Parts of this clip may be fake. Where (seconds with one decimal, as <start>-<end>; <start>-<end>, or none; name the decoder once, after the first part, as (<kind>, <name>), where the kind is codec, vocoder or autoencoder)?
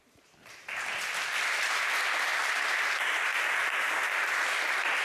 2.3-3.2 (vocoder, BigVGAN v2); 4.0-5.0